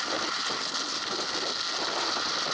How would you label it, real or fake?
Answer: real